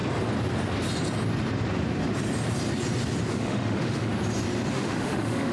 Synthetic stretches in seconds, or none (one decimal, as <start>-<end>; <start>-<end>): 3.3-4.1; 4.7-5.5